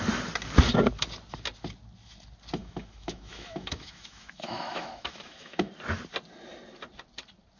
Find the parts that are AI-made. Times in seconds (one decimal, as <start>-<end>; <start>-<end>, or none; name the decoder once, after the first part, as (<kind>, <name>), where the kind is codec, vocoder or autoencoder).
2.6-5.7 (autoencoder, DAC-VAE)